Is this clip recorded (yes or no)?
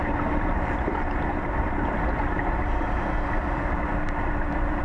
no